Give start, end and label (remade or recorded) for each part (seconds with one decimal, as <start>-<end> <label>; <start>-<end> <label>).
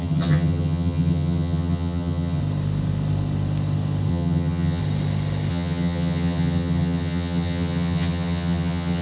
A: 0.0-2.4 remade; 2.4-4.1 recorded; 4.1-4.8 remade; 4.8-5.5 recorded; 5.5-9.0 remade